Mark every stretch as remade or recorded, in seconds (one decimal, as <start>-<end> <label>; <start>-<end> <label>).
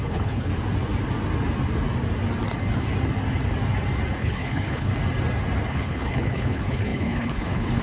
0.0-0.5 remade; 0.5-4.2 recorded; 4.2-4.9 remade; 4.9-5.7 recorded; 5.7-7.8 remade